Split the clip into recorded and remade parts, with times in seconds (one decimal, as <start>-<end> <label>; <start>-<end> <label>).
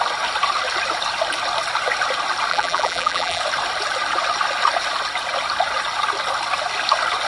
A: 0.0-2.5 recorded; 2.5-3.4 remade; 3.4-7.3 recorded